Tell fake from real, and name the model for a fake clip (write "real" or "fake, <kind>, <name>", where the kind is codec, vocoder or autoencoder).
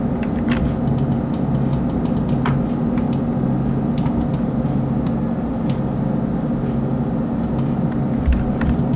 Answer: real